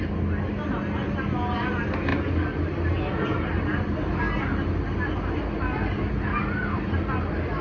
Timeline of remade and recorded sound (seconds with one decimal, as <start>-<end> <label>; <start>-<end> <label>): 0.0-7.6 recorded